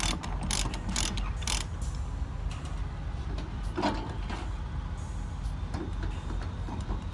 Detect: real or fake real